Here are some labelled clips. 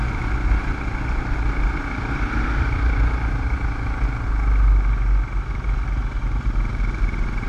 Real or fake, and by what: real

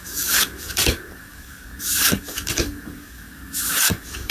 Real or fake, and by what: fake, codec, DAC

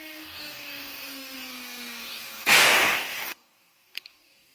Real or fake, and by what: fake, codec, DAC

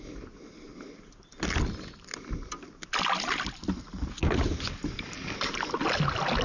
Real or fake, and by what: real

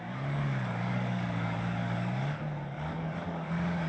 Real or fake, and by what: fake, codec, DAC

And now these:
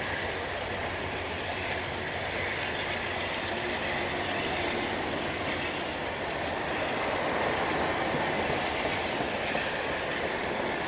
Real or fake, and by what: real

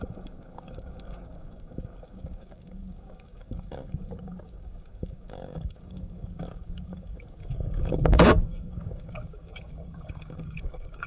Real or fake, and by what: fake, codec, DAC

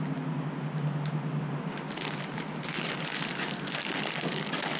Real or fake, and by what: real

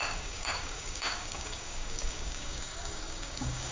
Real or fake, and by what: fake, codec, DAC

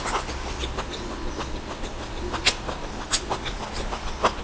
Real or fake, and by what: real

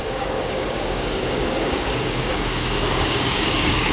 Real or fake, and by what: fake, codec, DAC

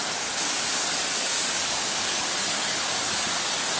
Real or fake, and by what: fake, codec, DAC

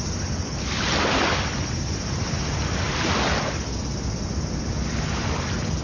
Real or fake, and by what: real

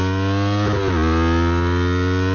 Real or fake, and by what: real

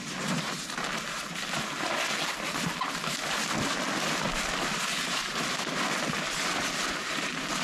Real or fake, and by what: real